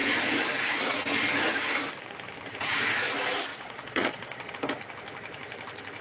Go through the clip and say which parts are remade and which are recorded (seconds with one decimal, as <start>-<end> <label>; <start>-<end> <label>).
0.0-3.5 recorded; 3.5-4.5 remade; 4.5-6.0 recorded